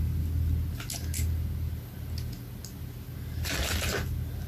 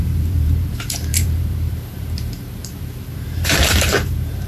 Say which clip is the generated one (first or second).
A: second